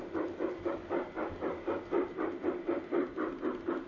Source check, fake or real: real